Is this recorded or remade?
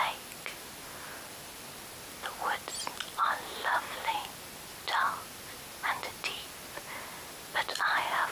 recorded